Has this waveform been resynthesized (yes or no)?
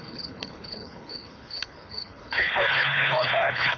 yes